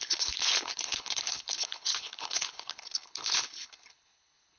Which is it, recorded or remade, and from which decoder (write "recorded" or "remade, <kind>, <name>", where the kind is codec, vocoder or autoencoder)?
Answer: remade, codec, HILCodec